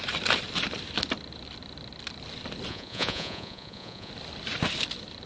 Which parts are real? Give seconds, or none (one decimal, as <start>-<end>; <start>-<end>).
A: 0.0-2.7; 4.1-5.3